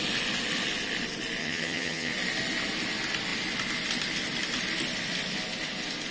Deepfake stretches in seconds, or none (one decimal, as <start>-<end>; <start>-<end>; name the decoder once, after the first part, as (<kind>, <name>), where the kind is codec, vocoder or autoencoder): 1.4-2.1 (vocoder, HiFi-GAN)